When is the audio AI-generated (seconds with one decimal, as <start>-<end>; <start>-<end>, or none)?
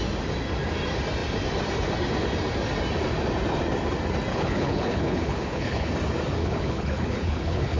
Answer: 4.3-5.9; 6.4-7.8